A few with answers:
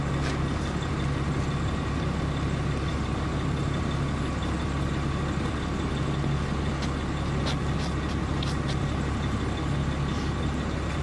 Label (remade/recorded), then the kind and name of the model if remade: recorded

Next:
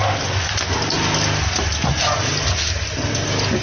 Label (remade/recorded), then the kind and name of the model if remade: recorded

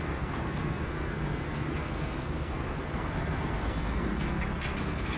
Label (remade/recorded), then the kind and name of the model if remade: remade, codec, SNAC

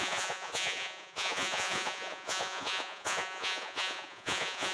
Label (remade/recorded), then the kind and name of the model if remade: remade, vocoder, Vocos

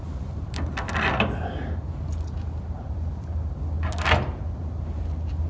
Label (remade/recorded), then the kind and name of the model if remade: recorded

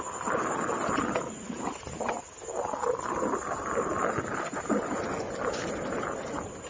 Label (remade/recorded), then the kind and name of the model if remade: recorded